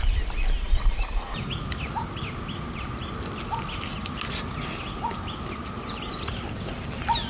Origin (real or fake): real